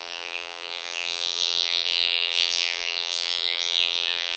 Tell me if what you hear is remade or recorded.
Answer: remade